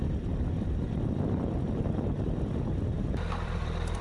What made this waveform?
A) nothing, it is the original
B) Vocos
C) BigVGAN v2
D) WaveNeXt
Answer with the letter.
C